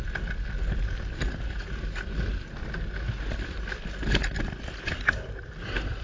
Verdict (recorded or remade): recorded